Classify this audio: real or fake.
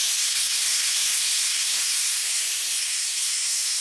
fake